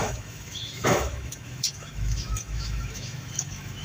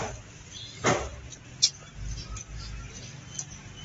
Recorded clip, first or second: second